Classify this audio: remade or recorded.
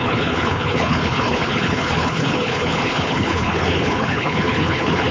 remade